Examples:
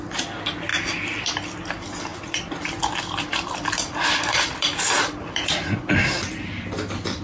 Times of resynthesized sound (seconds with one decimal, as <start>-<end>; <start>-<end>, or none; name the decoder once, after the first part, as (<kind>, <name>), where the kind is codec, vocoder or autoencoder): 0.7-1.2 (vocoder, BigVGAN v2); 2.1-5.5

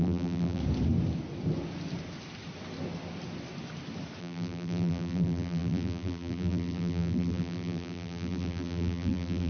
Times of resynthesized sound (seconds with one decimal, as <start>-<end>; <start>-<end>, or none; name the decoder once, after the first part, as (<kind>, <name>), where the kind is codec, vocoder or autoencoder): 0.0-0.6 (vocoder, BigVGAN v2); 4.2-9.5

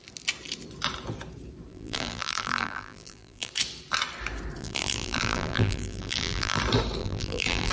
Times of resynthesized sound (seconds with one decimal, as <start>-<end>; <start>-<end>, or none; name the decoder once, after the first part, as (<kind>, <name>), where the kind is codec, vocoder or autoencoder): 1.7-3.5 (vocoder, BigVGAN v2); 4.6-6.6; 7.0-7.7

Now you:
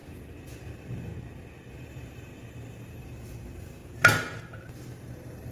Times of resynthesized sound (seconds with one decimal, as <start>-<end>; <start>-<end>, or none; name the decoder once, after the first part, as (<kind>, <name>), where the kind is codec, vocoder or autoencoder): 0.7-1.1 (vocoder, BigVGAN v2); 1.7-2.3; 3.0-3.8; 4.6-5.5

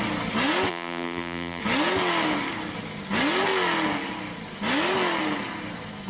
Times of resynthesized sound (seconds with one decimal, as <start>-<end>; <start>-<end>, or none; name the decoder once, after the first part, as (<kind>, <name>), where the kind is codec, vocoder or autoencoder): 0.7-1.6 (vocoder, BigVGAN v2)